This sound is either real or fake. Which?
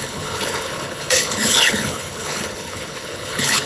fake